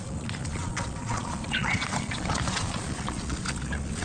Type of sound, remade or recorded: remade